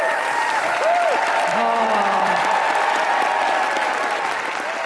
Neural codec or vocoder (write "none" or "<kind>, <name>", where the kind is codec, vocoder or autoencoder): vocoder, BigVGAN v2